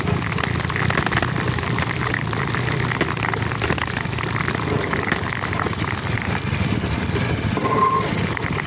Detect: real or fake real